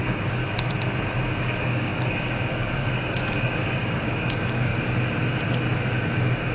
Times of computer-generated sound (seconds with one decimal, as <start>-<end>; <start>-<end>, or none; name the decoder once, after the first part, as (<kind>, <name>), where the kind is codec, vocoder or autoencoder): 0.0-0.4 (codec, DAC); 1.4-4.7; 5.9-6.5

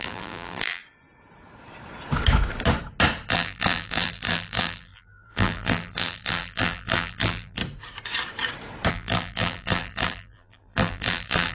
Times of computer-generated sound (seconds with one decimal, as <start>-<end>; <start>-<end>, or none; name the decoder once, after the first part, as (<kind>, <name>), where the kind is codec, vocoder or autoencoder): 0.0-0.8 (vocoder, BigVGAN v2); 3.3-7.6; 8.9-11.5

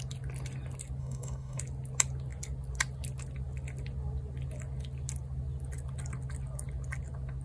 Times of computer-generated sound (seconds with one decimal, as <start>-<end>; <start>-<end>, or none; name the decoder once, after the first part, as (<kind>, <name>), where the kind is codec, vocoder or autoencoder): 1.0-1.6 (codec, DAC)

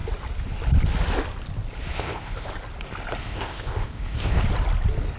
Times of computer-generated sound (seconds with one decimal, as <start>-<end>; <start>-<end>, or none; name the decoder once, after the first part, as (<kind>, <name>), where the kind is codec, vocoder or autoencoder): 1.9-2.5 (codec, ZipCodec); 3.2-4.4

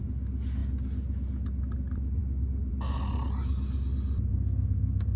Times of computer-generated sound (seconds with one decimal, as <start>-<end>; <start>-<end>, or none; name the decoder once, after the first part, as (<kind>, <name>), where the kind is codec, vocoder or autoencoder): 4.3-5.2 (codec, SNAC)

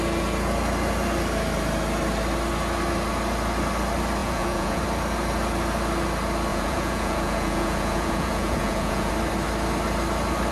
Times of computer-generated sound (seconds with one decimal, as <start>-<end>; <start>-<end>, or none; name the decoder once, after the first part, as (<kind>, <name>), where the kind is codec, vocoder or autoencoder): 4.2-4.8 (vocoder, Vocos); 6.5-9.1